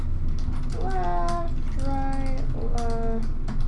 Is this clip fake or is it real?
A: real